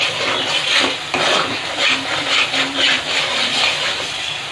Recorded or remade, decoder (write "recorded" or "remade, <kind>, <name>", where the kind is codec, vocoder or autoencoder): recorded